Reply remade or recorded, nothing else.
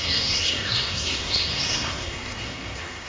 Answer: remade